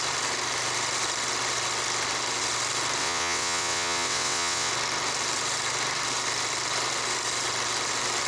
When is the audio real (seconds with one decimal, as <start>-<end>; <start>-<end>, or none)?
0.0-3.0; 4.7-8.3